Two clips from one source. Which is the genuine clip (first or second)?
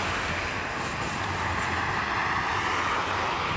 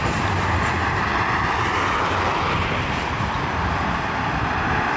first